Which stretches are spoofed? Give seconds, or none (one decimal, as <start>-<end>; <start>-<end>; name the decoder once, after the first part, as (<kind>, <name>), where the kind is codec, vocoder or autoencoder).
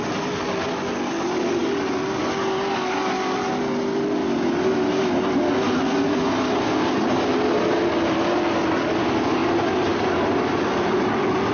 none